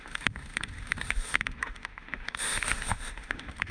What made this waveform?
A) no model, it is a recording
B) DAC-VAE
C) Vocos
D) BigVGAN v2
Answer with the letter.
B